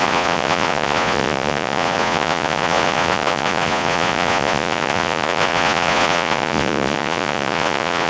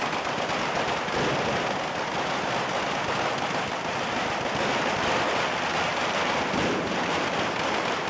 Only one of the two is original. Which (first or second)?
second